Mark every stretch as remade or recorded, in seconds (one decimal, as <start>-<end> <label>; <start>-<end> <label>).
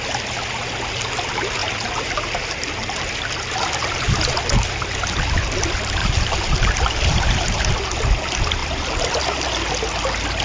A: 0.0-6.0 recorded; 6.0-7.7 remade; 7.7-10.4 recorded